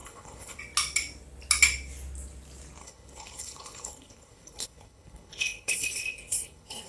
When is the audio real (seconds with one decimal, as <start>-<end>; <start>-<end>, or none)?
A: 0.6-2.8